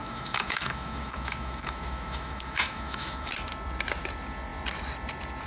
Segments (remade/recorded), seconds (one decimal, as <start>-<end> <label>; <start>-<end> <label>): 0.0-3.3 remade; 3.3-5.5 recorded